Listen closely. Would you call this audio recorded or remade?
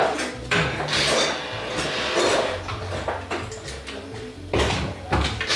recorded